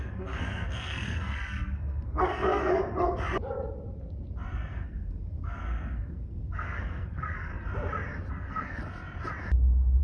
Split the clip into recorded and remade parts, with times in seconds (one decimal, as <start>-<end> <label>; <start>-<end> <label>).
0.0-2.8 remade; 2.8-4.5 recorded; 4.5-7.5 remade; 7.5-8.3 recorded; 8.3-8.8 remade; 8.8-10.0 recorded